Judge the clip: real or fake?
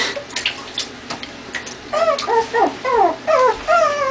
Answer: real